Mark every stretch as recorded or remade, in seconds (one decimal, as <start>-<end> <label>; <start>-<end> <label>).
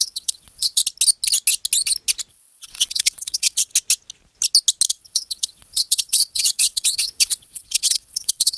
0.0-0.8 remade; 0.8-2.3 recorded; 2.3-3.7 remade; 3.7-4.9 recorded; 4.9-8.6 remade